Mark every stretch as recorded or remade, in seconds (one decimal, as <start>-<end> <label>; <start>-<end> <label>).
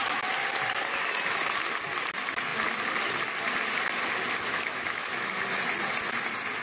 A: 0.0-4.5 recorded; 4.5-5.4 remade; 5.4-6.6 recorded